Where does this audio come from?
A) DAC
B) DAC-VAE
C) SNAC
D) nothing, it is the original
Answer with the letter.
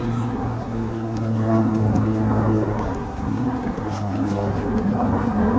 C